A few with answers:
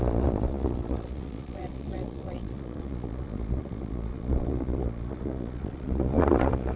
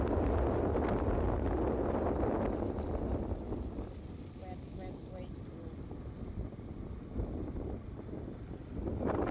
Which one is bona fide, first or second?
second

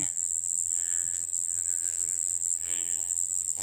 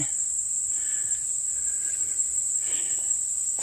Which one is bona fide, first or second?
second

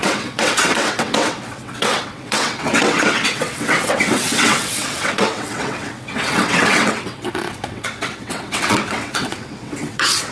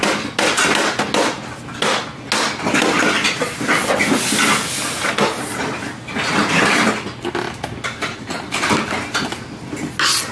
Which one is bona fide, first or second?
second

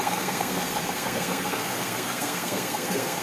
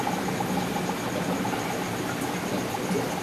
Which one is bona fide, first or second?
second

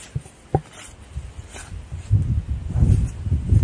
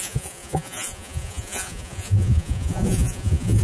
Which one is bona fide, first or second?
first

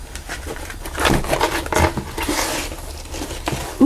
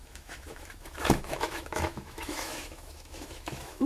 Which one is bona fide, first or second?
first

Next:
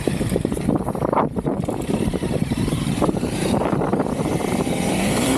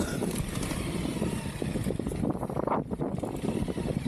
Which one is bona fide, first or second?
second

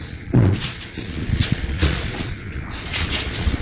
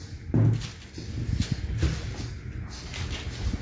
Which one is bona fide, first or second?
second